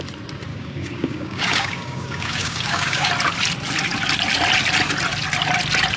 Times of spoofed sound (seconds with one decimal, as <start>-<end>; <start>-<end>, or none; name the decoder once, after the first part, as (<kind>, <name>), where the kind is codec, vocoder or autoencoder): 0.5-3.1 (codec, DAC)